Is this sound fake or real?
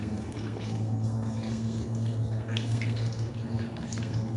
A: fake